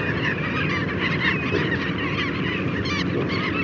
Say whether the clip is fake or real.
real